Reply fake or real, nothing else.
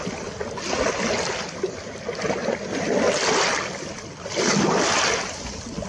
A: real